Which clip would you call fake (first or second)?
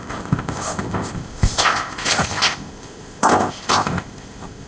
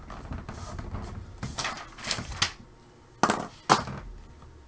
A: first